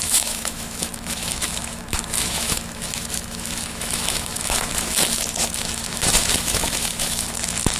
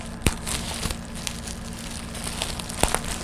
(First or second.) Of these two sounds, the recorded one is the second